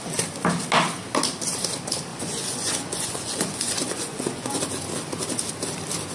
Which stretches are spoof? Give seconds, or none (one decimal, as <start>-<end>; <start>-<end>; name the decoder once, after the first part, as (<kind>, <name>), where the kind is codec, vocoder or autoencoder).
2.1-4.6 (vocoder, Vocos)

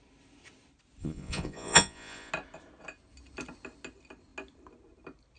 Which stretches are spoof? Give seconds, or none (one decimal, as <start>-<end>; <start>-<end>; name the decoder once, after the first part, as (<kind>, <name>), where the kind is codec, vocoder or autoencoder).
1.0-2.3 (vocoder, Vocos)

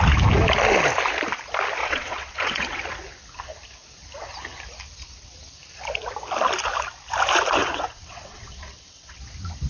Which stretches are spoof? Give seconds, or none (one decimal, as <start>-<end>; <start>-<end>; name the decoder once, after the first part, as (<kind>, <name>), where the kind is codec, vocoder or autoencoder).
1.8-2.8 (vocoder, WaveNeXt); 7.6-9.2

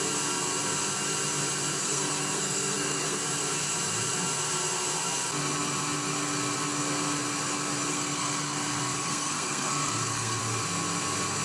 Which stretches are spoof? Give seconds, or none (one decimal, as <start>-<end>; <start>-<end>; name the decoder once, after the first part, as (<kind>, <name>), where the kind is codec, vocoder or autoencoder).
1.8-3.2 (codec, SNAC); 7.9-10.4

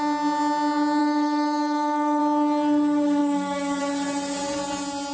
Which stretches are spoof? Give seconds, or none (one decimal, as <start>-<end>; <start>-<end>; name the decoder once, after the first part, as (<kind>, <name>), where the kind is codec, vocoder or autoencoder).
1.0-2.2 (autoencoder, DAC-VAE); 3.2-3.8

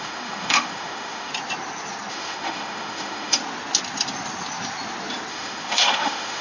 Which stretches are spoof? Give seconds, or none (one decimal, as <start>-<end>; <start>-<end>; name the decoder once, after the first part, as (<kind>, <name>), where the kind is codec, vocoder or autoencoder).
0.0-1.3 (autoencoder, DAC-VAE); 2.1-3.4; 5.3-6.4

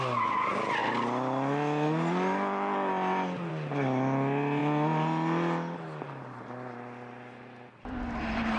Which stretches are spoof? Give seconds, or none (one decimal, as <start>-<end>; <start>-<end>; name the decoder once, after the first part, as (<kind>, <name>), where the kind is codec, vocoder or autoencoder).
none

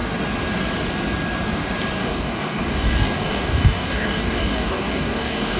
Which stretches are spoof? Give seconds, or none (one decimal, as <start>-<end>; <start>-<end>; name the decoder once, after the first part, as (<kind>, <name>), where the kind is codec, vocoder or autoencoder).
2.0-5.6 (codec, DAC)